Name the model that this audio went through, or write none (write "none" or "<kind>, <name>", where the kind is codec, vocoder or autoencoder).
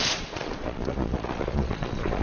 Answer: vocoder, Vocos